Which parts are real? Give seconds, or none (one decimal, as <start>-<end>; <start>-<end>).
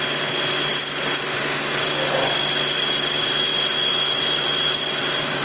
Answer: 0.0-5.4